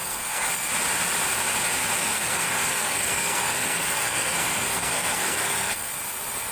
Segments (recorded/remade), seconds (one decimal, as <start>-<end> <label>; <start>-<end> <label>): 0.0-0.5 remade; 0.5-2.0 recorded; 2.0-5.9 remade; 5.9-6.5 recorded